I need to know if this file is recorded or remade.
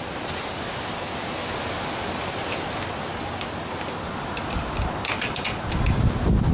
recorded